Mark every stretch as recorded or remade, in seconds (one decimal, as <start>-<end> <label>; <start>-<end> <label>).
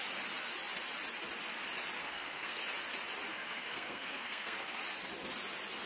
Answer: 0.0-2.0 recorded; 2.0-2.6 remade; 2.6-3.3 recorded; 3.3-4.8 remade; 4.8-5.9 recorded